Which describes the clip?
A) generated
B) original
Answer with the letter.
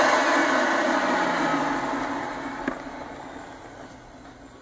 B